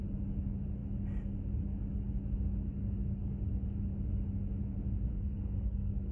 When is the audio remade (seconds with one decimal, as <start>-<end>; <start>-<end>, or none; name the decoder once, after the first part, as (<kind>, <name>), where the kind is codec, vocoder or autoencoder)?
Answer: 5.1-6.1 (codec, SNAC)